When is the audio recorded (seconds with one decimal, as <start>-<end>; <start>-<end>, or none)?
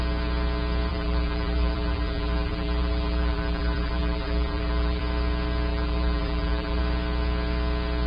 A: 0.0-0.9; 5.0-5.7; 6.8-8.1